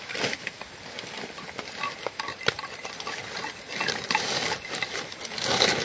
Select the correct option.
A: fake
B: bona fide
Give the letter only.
B